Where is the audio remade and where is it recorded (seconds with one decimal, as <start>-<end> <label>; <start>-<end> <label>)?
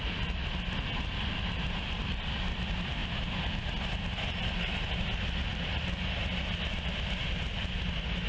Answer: 0.0-8.3 recorded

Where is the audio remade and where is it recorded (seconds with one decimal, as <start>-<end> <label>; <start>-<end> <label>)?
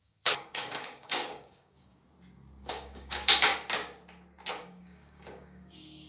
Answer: 0.0-2.0 remade; 2.0-2.7 recorded; 2.7-3.5 remade; 3.5-4.6 recorded; 4.6-6.1 remade